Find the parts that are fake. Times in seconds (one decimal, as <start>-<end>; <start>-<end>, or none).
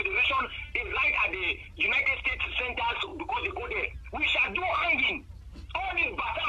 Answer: 3.1-3.9